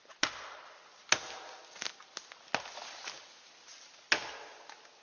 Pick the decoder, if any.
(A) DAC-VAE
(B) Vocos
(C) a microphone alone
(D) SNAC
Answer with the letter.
C